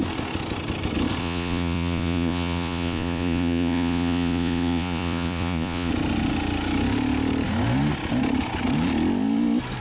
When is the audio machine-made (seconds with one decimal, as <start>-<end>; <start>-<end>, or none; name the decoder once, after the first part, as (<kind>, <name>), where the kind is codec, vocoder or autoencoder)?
1.2-5.9 (vocoder, Vocos)